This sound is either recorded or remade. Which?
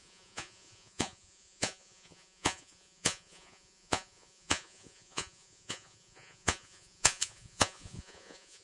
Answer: remade